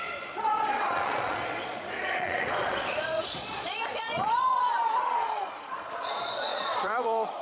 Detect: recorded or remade remade